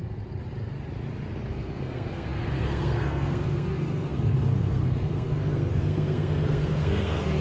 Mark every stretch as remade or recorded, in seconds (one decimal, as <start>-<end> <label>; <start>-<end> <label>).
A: 0.0-1.5 recorded; 1.5-7.4 remade